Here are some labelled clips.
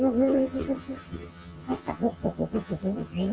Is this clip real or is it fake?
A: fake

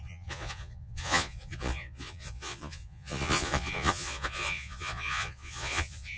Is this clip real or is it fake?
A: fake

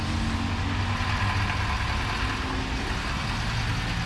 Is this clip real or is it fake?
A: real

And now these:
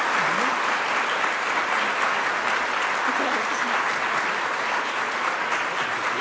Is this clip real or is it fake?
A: real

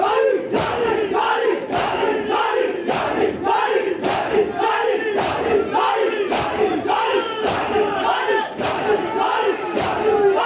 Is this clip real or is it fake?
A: real